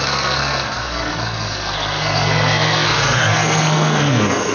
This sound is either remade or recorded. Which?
remade